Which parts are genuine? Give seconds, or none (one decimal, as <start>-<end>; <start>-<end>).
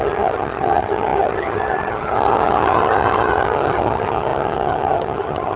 none